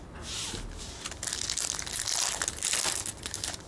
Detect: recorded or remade recorded